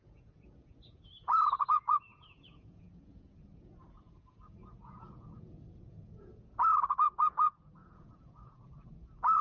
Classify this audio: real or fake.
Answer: fake